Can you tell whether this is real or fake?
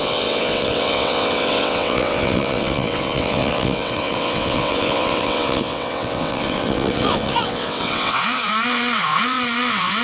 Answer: fake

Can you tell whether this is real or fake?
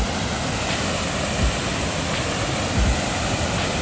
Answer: real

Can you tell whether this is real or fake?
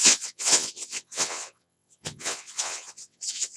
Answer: fake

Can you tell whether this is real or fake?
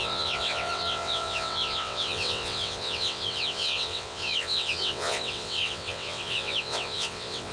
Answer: fake